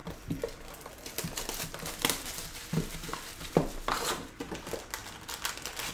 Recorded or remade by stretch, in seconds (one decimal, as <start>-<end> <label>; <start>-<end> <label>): 0.0-5.9 recorded